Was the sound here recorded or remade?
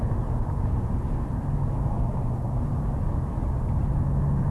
recorded